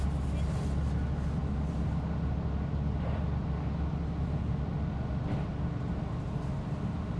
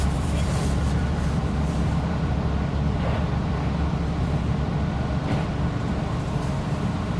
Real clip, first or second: first